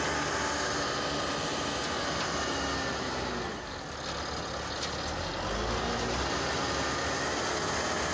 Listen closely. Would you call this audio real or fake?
real